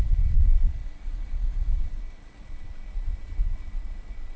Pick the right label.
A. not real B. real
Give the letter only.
A